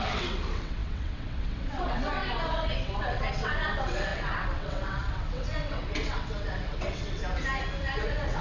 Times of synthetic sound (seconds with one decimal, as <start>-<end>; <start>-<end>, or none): 0.0-7.2; 7.8-8.4